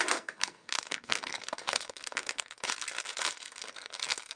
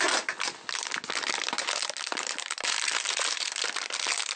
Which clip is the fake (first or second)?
first